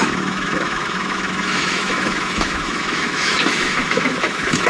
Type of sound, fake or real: fake